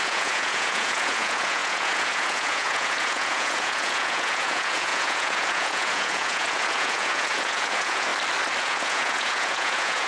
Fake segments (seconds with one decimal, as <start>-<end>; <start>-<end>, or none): 0.0-8.1; 8.6-10.1